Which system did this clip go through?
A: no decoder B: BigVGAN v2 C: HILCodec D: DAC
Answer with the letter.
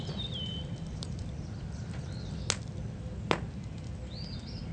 A